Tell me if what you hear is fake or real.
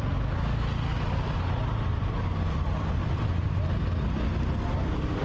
real